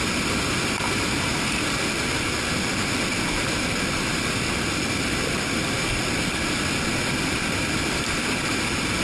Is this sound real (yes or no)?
yes